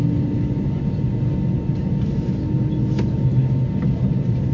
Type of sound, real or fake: real